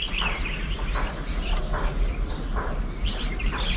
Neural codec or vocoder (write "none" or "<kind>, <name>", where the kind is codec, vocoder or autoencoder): none